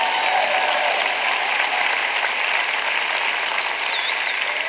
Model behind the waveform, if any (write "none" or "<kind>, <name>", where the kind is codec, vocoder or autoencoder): none